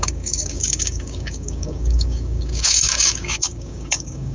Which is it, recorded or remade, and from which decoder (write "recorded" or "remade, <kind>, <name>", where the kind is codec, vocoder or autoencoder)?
remade, codec, DAC